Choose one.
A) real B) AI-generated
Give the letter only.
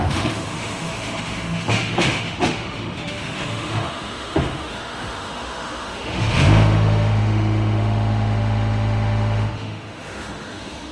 B